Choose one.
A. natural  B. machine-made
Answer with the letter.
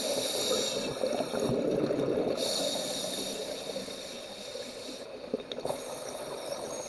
A